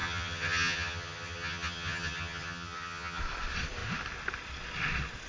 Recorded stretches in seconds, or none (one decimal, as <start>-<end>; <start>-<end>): 3.2-5.3